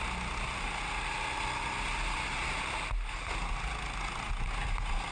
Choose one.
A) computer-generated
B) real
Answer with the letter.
B